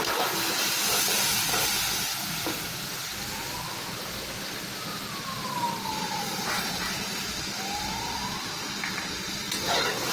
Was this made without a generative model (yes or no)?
yes